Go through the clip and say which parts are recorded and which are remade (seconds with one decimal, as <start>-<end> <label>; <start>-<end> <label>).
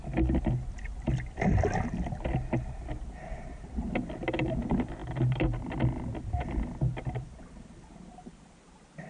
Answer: 0.0-9.1 recorded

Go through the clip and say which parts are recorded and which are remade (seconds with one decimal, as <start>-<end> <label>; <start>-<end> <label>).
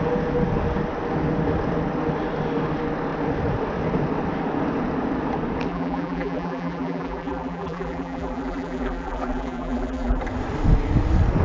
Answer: 0.0-5.7 recorded; 5.7-10.2 remade; 10.2-11.4 recorded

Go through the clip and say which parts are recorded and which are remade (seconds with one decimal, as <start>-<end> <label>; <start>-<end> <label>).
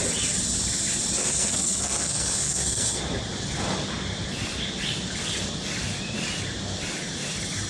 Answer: 0.0-1.2 recorded; 1.2-3.0 remade; 3.0-7.7 recorded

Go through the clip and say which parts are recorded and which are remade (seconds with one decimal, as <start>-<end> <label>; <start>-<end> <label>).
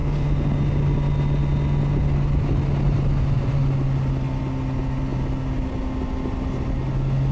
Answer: 0.0-7.3 recorded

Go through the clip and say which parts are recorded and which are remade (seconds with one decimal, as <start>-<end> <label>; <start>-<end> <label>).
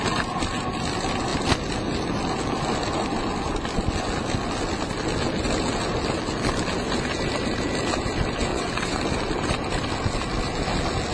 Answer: 0.0-8.5 recorded; 8.5-9.0 remade; 9.0-11.1 recorded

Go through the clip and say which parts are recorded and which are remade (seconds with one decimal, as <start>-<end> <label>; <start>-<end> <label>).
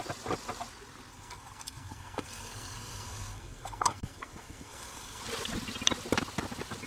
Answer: 0.0-1.1 recorded; 1.1-5.2 remade; 5.2-6.9 recorded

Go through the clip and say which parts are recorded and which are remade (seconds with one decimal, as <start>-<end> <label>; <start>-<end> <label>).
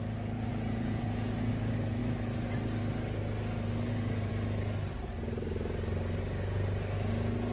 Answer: 0.0-0.5 recorded; 0.5-1.5 remade; 1.5-7.5 recorded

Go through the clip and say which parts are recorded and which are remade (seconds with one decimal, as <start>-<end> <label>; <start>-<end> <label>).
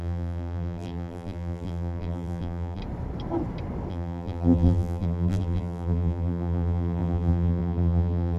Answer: 0.0-2.8 remade; 2.8-3.9 recorded; 3.9-8.4 remade